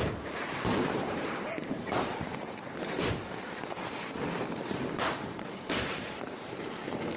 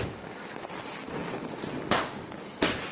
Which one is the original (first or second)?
second